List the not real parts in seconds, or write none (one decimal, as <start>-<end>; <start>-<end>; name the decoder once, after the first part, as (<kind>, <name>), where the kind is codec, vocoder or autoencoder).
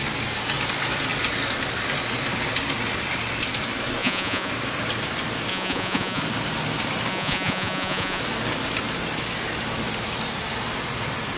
4.0-4.5 (vocoder, Vocos); 5.5-6.2; 7.1-8.2